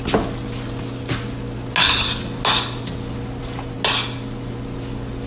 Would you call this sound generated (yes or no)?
no